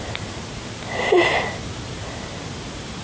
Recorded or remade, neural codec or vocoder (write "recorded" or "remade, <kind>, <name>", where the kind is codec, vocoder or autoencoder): remade, vocoder, BigVGAN v2